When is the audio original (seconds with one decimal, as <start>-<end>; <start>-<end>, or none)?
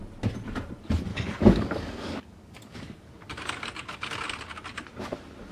0.0-1.1; 4.1-5.5